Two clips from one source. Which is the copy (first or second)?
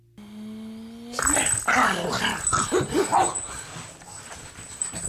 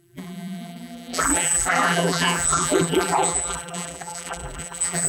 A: second